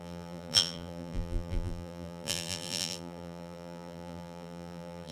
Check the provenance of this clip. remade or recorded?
remade